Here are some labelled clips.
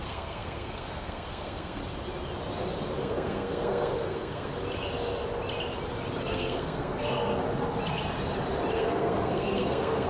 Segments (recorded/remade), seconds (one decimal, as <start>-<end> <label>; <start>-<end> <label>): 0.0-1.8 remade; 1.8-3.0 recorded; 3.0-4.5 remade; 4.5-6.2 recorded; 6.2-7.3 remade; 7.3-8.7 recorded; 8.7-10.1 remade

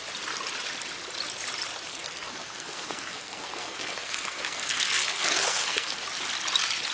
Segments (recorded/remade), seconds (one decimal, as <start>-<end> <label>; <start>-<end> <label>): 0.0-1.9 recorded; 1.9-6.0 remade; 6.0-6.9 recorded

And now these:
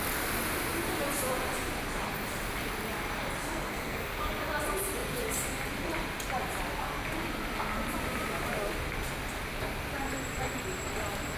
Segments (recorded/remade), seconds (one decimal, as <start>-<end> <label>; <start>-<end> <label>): 0.0-3.4 recorded; 3.4-4.3 remade; 4.3-11.4 recorded